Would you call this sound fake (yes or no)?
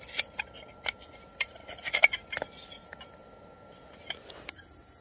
no